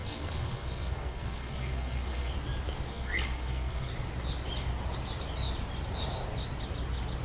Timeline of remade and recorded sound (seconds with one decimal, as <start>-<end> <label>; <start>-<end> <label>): 0.0-2.3 remade; 2.3-2.9 recorded; 2.9-3.9 remade; 3.9-7.2 recorded